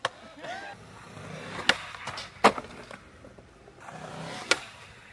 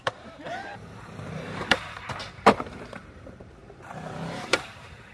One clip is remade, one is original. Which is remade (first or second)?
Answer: second